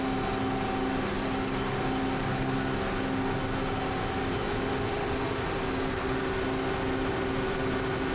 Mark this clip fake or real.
real